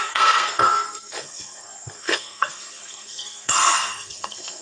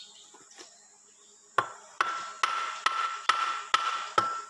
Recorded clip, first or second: second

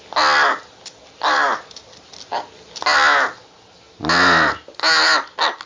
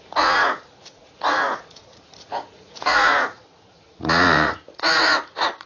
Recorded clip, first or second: first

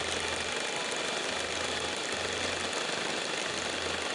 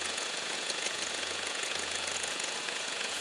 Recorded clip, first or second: first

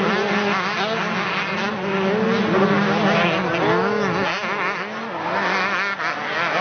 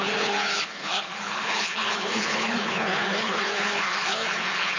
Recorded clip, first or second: first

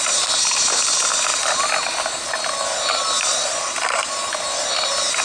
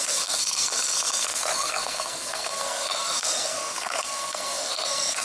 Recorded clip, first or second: first